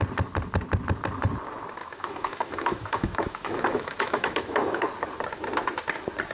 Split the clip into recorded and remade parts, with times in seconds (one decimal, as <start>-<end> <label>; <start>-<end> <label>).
0.0-1.8 recorded; 1.8-4.8 remade; 4.8-6.3 recorded